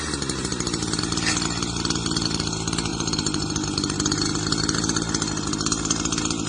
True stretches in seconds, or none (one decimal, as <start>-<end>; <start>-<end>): 0.0-6.5